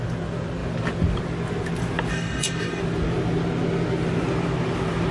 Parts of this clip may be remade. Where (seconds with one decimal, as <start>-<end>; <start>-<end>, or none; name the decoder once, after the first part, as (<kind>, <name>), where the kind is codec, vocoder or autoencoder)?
2.1-2.8 (codec, DAC)